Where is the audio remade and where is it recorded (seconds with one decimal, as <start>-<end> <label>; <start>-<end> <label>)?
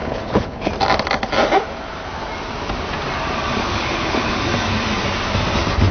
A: 0.0-0.7 remade; 0.7-3.6 recorded; 3.6-4.4 remade; 4.4-5.9 recorded